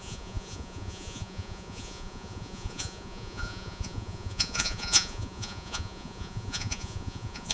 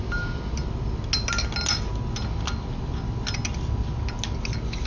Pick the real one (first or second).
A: second